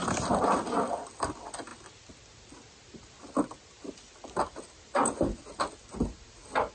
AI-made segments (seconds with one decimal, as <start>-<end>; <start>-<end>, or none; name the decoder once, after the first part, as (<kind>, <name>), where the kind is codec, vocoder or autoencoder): none